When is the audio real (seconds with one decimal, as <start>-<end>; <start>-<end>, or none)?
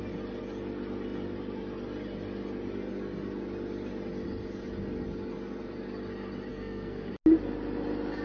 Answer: 0.0-6.5; 7.1-8.2